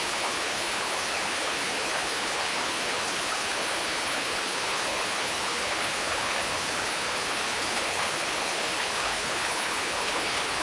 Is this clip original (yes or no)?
no